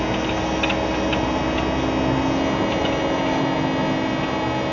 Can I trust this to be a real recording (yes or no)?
yes